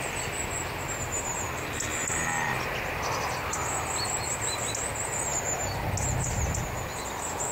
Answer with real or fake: real